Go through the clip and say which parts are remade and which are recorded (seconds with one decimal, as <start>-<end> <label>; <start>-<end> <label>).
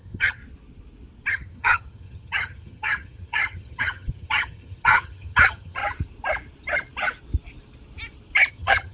0.0-0.4 remade; 0.4-1.3 recorded; 1.3-5.8 remade; 5.8-8.5 recorded; 8.5-8.9 remade